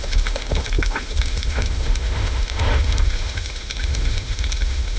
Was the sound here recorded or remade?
remade